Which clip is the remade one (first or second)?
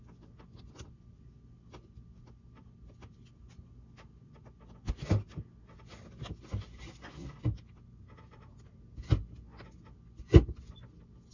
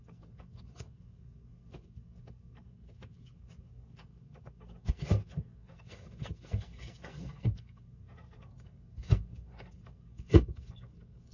second